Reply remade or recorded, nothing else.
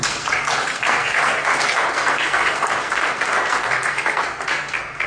remade